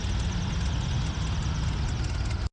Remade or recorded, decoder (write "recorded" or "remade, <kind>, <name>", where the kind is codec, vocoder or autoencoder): recorded